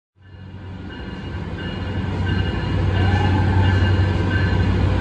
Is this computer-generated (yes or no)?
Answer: no